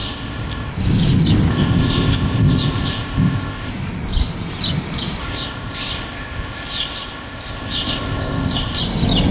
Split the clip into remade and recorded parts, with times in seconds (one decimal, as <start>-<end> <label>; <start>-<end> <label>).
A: 0.0-0.7 remade; 0.7-1.5 recorded; 1.5-3.7 remade; 3.7-5.2 recorded; 5.2-8.8 remade; 8.8-9.3 recorded